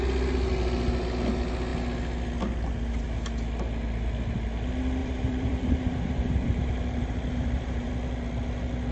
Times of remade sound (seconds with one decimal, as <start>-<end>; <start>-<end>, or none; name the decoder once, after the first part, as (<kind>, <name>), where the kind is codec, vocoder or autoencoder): 5.0-7.9 (vocoder, BigVGAN v2)